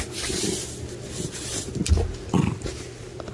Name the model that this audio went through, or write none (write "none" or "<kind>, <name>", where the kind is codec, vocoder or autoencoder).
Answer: none